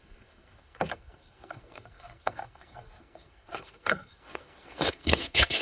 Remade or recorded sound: remade